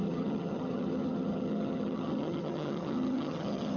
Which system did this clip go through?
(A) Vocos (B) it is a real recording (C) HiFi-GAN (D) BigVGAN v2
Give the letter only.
C